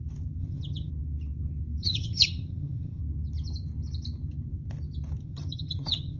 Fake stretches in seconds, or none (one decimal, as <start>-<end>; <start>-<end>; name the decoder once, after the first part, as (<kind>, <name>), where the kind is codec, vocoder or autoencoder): 0.4-0.9 (vocoder, HiFi-GAN); 1.8-3.0; 5.2-6.2